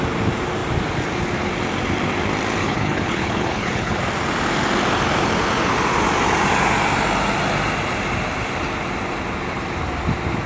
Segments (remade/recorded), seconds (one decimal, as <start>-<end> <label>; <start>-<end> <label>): 0.0-2.6 recorded; 2.6-4.0 remade; 4.0-10.5 recorded